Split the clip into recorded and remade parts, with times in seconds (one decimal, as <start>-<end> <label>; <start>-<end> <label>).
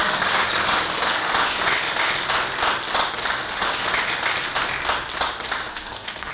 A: 0.0-5.7 recorded; 5.7-6.3 remade